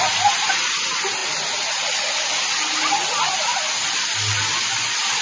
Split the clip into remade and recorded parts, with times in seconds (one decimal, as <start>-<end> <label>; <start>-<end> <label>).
0.0-5.2 recorded